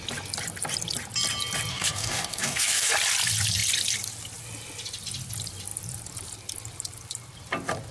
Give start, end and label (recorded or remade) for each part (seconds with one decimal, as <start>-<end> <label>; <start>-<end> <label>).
0.0-1.7 recorded; 1.7-2.9 remade; 2.9-7.9 recorded

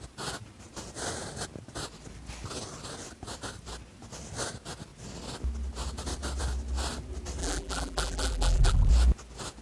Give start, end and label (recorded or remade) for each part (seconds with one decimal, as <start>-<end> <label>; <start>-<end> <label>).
0.0-7.4 recorded; 7.4-8.9 remade; 8.9-9.6 recorded

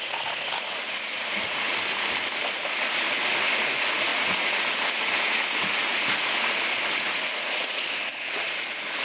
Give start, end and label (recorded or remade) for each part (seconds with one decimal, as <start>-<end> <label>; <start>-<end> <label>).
0.0-1.7 remade; 1.7-2.5 recorded; 2.5-9.0 remade

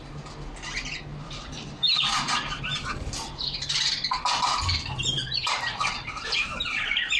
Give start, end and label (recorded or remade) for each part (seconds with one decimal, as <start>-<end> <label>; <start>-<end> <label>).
0.0-1.1 recorded; 1.1-2.3 remade; 2.3-2.7 recorded; 2.7-7.2 remade

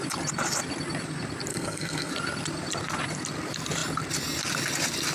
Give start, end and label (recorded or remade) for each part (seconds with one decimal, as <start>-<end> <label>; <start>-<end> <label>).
0.0-1.5 recorded; 1.5-2.1 remade; 2.1-5.1 recorded

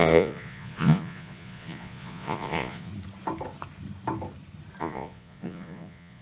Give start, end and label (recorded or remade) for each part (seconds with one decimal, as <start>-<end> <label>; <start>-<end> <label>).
0.0-2.9 remade; 2.9-4.8 recorded; 4.8-6.2 remade